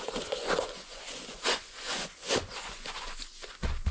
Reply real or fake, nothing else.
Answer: fake